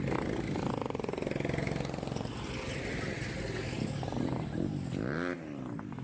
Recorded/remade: recorded